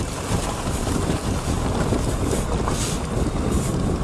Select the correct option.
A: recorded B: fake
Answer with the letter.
A